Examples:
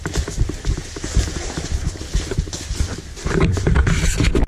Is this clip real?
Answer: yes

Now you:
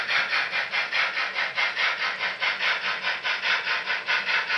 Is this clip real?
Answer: yes